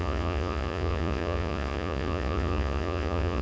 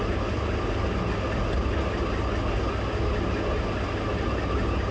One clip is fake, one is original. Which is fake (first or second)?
first